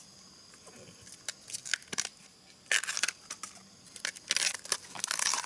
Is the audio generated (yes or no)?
no